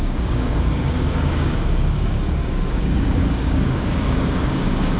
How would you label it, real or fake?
fake